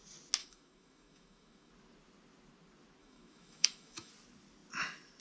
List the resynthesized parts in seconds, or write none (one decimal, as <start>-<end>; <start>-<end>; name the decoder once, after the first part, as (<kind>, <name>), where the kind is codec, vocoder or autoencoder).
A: 0.4-1.7 (autoencoder, DAC-VAE); 3.0-4.1